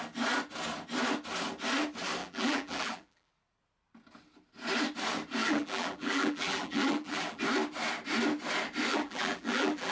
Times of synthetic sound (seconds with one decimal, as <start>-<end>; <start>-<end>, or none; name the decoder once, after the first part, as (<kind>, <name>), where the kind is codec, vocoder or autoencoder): 2.2-3.3 (vocoder, BigVGAN v2); 5.4-7.4; 8.9-9.9